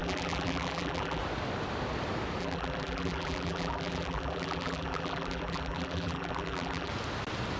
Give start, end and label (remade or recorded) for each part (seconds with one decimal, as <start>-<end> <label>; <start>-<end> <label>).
0.0-1.2 remade; 1.2-2.4 recorded; 2.4-6.9 remade; 6.9-7.6 recorded